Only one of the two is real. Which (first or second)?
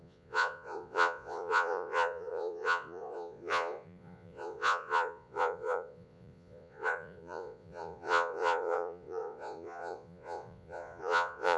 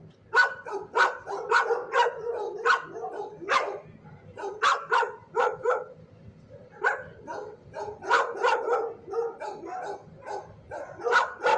second